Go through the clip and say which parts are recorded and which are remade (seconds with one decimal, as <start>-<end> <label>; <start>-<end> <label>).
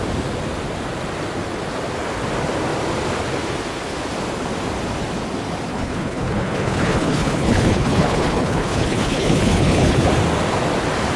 0.0-5.7 recorded; 5.7-10.1 remade; 10.1-11.2 recorded